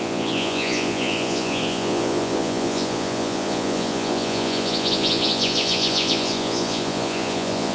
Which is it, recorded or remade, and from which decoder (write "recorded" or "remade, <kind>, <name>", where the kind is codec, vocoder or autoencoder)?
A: remade, vocoder, Vocos